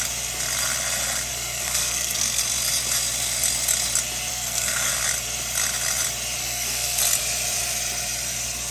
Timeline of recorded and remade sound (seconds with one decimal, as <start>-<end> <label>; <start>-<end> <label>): 0.0-1.3 recorded; 1.3-2.4 remade; 2.4-4.3 recorded; 4.3-4.9 remade; 4.9-6.4 recorded; 6.4-7.0 remade; 7.0-8.7 recorded